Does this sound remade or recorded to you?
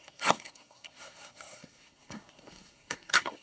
remade